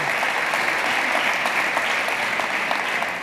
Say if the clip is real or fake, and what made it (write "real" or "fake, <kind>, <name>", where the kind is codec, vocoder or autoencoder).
real